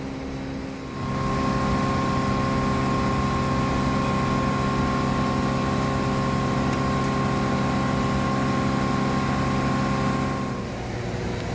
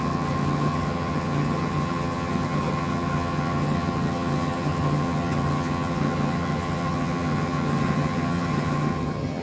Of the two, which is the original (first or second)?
first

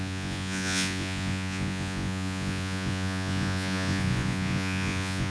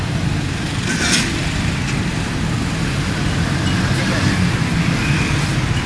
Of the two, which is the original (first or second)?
second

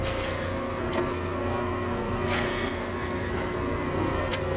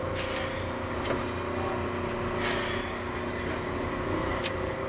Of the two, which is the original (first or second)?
second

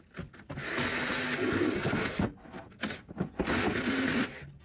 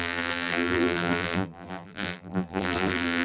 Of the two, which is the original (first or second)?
first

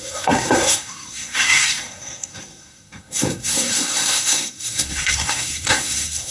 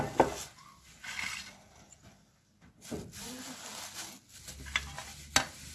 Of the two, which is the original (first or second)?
second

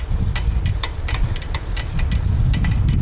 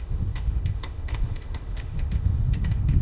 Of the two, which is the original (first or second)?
first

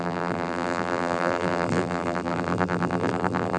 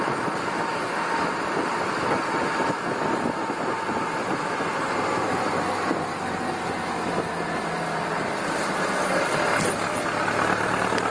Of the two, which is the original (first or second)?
second